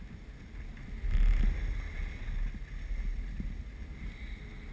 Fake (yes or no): no